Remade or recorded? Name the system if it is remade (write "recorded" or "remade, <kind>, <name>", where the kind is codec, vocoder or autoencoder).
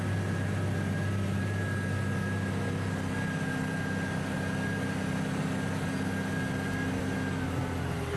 recorded